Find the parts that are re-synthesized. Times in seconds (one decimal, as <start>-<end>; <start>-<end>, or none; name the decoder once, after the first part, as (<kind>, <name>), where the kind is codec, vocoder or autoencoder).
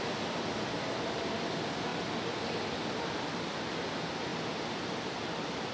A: none